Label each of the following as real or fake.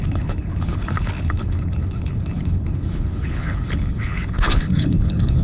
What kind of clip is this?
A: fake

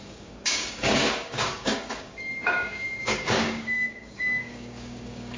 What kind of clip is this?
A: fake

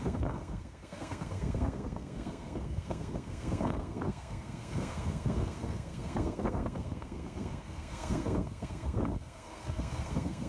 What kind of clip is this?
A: fake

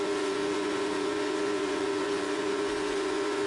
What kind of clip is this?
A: fake